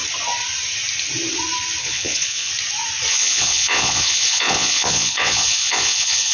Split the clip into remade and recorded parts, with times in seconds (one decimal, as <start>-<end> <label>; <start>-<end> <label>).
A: 0.0-1.8 recorded; 1.8-2.5 remade; 2.5-3.1 recorded; 3.1-6.3 remade